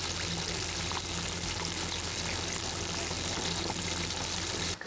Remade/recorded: recorded